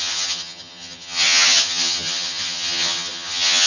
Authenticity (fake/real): fake